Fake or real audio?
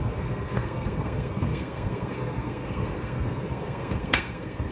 fake